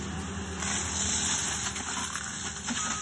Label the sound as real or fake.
real